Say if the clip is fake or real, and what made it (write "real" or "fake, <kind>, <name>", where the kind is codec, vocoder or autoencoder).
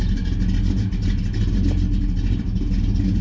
real